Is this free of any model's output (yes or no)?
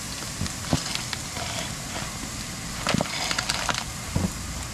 yes